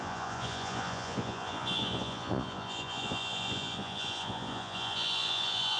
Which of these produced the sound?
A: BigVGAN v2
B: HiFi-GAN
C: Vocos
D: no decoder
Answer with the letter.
C